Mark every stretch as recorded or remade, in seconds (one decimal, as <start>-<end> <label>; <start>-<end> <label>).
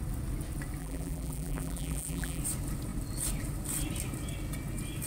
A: 0.0-0.8 recorded; 0.8-2.4 remade; 2.4-5.1 recorded